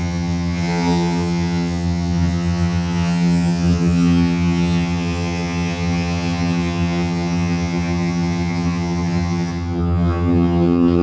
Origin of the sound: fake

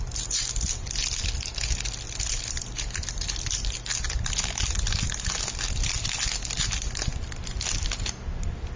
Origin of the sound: real